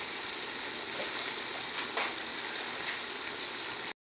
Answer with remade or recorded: recorded